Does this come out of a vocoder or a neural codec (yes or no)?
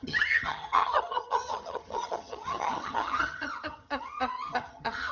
yes